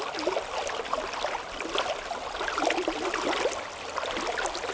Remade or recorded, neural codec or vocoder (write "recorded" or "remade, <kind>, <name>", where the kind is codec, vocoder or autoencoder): recorded